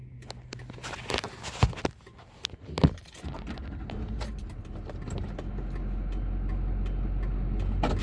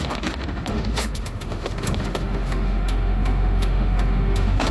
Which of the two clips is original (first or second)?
first